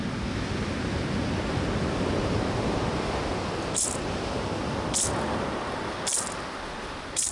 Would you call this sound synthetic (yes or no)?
no